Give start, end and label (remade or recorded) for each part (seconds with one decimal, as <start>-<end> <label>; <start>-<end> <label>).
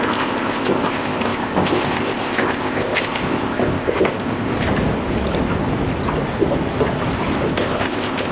0.0-4.5 remade; 4.5-7.5 recorded; 7.5-8.3 remade